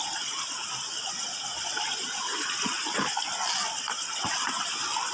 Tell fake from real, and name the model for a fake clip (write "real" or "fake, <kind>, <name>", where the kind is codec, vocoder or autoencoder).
real